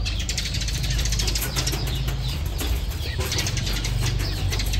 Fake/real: fake